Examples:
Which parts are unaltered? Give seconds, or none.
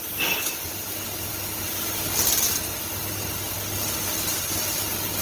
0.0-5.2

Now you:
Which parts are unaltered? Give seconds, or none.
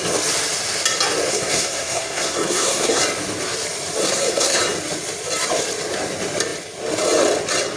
0.0-1.3; 3.0-4.0; 4.6-7.8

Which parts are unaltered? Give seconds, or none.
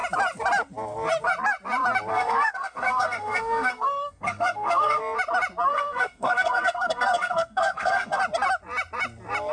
0.0-2.1; 5.0-5.7; 8.2-9.5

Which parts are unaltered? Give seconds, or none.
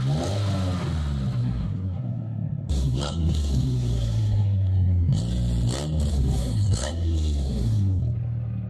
0.0-1.4; 5.2-6.1; 8.0-8.7